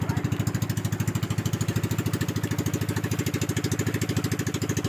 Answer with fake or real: real